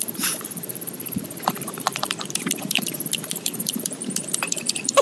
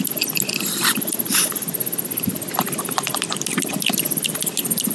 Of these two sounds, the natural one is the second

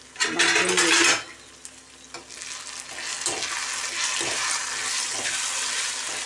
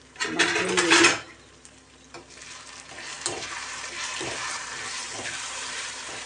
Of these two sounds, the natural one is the first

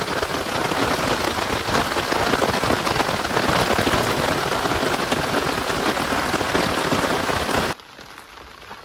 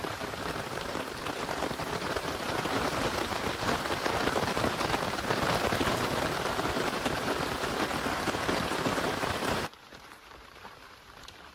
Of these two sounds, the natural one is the first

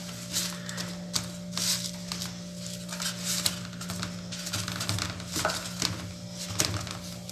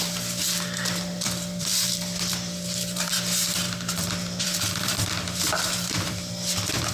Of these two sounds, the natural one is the first